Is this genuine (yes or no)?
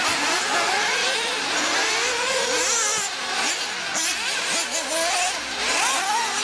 yes